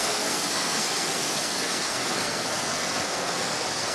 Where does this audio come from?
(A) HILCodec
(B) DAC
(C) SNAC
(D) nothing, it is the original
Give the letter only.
C